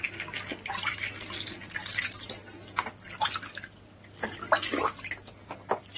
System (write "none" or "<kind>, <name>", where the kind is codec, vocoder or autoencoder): none